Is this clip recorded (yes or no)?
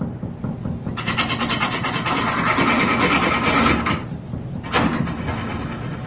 yes